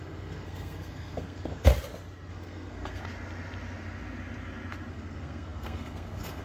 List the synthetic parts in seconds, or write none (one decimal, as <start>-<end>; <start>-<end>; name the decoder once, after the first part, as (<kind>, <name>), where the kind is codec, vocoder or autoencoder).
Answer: 0.0-1.7 (codec, SNAC); 2.3-3.0; 4.9-6.4

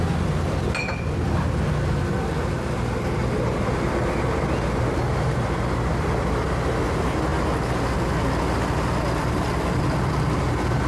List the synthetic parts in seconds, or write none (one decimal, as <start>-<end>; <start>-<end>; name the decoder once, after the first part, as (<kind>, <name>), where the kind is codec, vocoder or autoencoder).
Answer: none

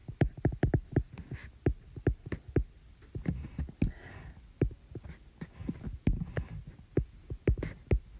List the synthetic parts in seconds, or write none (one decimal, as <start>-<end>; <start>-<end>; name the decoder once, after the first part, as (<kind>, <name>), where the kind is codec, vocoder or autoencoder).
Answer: none

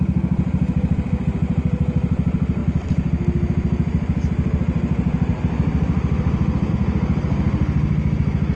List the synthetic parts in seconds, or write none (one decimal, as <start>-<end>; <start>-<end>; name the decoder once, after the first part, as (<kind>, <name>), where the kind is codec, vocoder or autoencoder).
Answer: none